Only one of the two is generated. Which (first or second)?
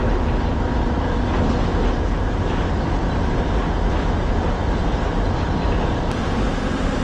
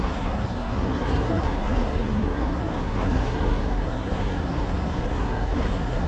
second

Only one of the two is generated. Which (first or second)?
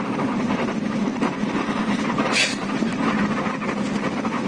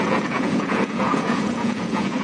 second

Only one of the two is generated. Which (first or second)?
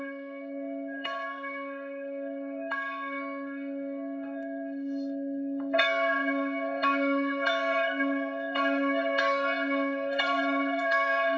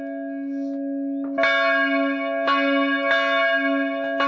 first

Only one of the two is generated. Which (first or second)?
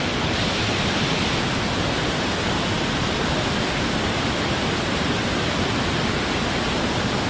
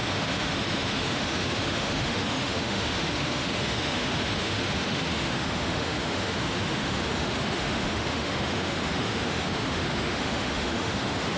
second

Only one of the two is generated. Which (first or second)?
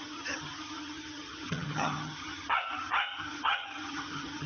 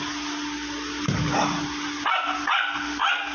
first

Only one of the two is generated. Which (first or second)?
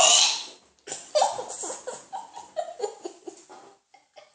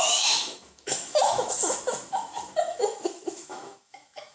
second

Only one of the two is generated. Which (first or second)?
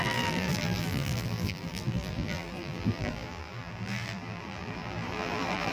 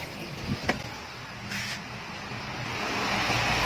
first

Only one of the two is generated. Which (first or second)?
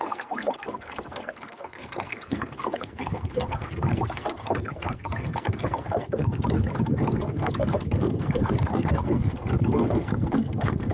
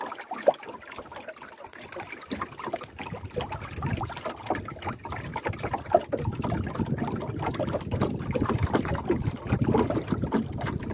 first